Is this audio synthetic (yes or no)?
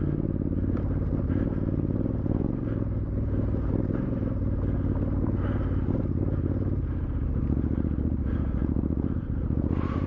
yes